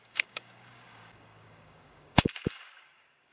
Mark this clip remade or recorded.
remade